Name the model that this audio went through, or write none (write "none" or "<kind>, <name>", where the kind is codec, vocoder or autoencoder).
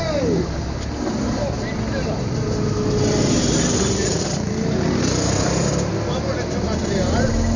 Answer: none